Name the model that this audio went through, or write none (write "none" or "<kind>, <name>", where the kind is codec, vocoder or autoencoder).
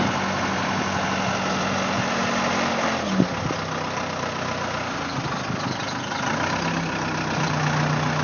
none